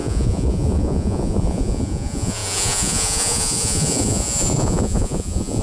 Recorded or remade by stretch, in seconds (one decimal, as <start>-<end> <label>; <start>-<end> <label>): 0.0-5.6 remade